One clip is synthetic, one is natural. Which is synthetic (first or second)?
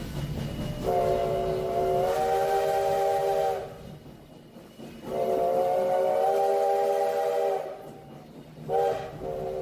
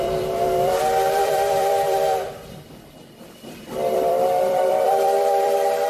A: second